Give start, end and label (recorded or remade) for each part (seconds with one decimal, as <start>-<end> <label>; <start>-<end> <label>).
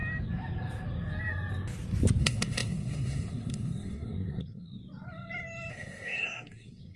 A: 0.0-2.2 recorded; 2.2-4.8 remade; 4.8-5.7 recorded; 5.7-7.0 remade